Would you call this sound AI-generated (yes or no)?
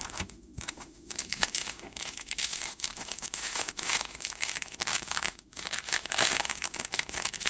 yes